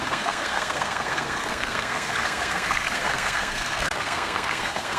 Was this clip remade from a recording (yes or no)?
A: yes